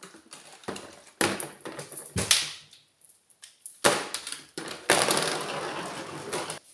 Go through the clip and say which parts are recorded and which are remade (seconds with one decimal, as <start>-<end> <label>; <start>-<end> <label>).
0.0-6.7 recorded